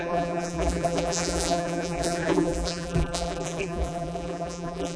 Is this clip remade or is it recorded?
remade